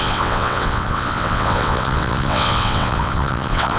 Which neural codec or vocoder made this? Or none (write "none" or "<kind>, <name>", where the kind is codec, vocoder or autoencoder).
vocoder, WaveNeXt